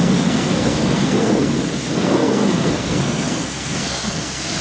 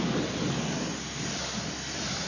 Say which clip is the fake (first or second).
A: first